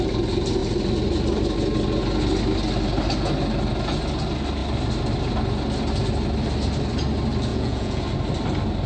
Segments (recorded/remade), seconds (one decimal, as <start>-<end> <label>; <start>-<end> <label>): 0.0-7.5 recorded; 7.5-8.0 remade; 8.0-8.9 recorded